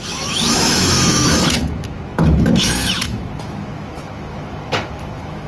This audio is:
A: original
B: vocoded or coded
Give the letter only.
B